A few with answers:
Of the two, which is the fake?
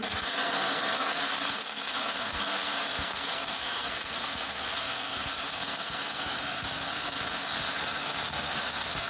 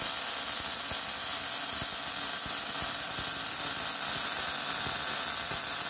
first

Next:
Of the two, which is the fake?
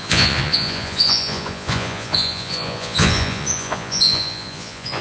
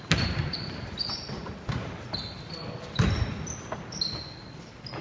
first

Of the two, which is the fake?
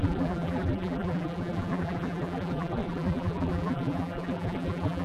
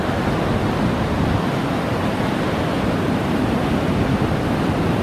first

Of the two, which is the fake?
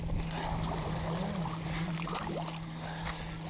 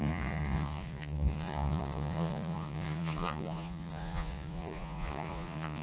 second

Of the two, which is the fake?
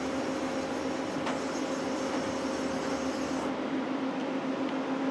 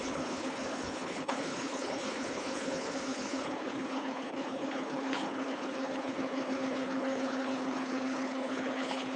second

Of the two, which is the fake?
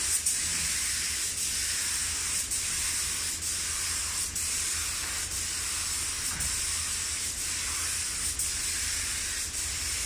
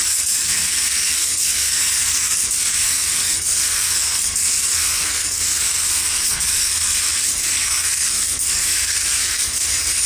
second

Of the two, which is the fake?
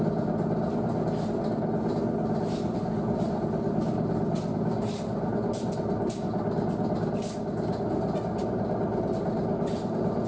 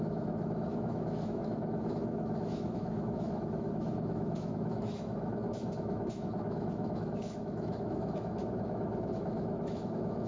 second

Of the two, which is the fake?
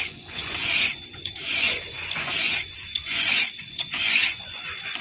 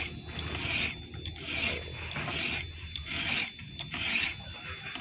first